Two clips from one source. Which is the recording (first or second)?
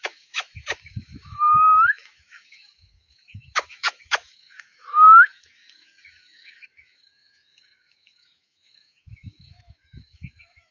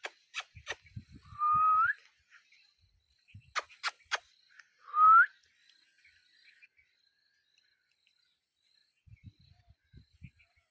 second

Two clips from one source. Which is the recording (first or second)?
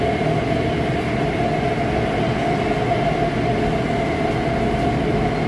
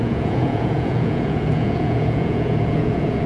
first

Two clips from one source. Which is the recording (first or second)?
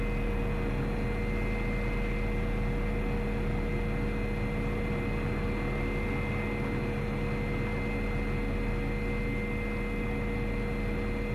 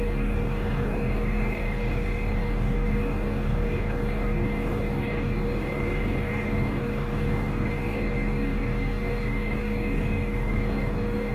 first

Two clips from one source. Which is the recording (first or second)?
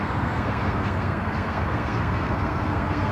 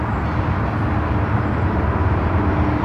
second